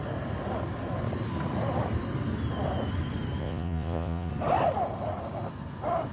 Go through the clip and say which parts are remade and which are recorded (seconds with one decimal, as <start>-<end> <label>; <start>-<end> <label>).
0.0-3.4 recorded; 3.4-4.3 remade; 4.3-6.1 recorded